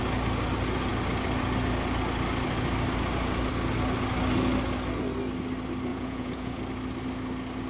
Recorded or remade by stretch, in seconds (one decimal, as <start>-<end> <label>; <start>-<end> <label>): 0.0-5.9 recorded; 5.9-6.6 remade; 6.6-7.7 recorded